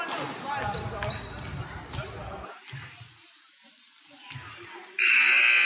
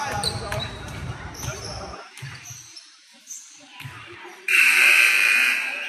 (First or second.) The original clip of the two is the first